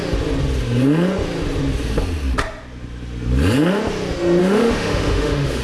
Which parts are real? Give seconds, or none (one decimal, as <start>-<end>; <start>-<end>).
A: 0.0-4.4